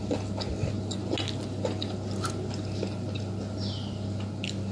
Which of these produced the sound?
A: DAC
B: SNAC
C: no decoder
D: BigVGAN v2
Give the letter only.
C